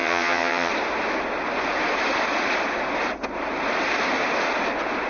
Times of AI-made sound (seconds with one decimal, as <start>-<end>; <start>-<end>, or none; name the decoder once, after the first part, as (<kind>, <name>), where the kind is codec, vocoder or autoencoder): 0.0-0.7 (vocoder, HiFi-GAN)